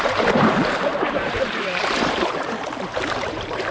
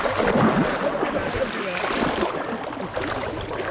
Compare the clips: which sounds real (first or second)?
second